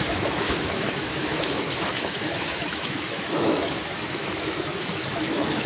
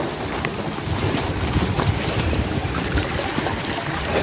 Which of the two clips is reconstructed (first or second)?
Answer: first